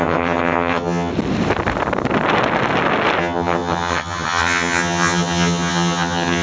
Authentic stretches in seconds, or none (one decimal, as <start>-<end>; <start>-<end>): 1.1-3.2